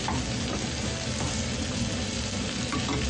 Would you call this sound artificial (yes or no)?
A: no